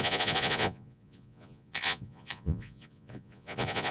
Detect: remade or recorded remade